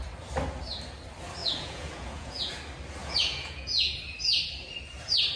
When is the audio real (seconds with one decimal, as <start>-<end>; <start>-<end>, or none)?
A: 0.0-1.4; 2.6-3.0; 4.0-5.4